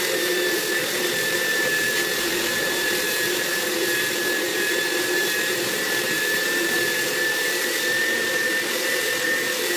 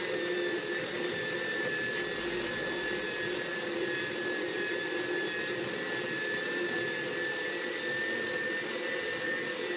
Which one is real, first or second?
second